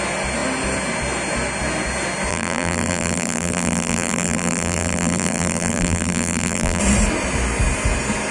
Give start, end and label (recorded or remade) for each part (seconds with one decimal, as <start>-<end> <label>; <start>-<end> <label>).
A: 0.0-2.3 recorded; 2.3-6.8 remade; 6.8-8.3 recorded